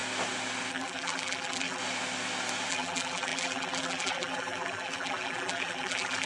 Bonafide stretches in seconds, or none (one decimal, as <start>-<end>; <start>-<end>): 0.0-0.7; 1.8-2.7

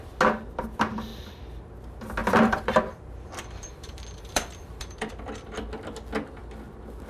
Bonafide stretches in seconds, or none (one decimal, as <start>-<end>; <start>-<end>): 0.0-2.2; 5.1-7.1